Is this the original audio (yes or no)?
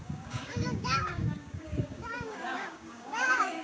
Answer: no